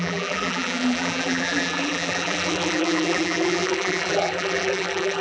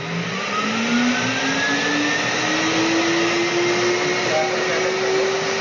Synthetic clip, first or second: first